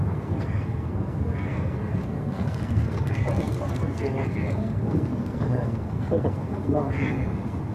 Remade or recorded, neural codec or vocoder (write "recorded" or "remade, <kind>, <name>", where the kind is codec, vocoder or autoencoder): remade, codec, SNAC